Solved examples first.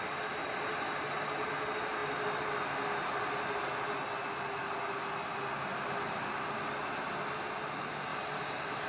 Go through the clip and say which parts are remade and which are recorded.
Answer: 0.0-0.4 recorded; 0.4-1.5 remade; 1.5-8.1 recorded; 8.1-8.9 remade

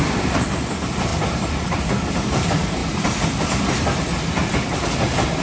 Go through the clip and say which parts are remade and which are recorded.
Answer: 0.0-1.1 remade; 1.1-2.1 recorded; 2.1-2.8 remade; 2.8-5.4 recorded

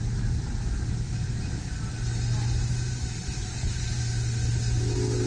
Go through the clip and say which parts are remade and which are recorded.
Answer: 0.0-2.7 recorded; 2.7-4.0 remade; 4.0-5.3 recorded

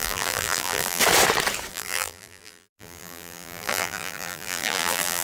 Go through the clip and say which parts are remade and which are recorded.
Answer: 0.0-1.0 remade; 1.0-1.7 recorded; 1.7-5.2 remade